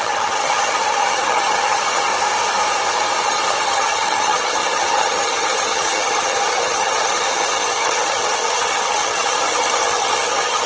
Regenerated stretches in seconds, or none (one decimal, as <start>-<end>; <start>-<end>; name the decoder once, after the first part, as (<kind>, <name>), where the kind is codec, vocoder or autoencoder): 0.0-2.1 (vocoder, HiFi-GAN); 3.2-10.7